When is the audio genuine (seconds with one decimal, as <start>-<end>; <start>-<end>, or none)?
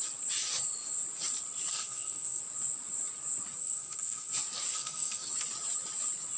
0.0-1.7; 2.4-3.6; 4.3-4.7; 5.2-6.4